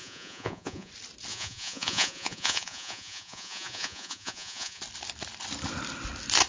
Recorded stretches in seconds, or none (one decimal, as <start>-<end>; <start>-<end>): 0.9-1.3; 4.8-6.5